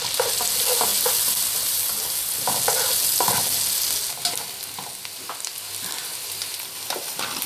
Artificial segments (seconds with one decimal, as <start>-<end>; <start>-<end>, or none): none